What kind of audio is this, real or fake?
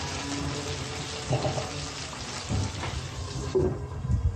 real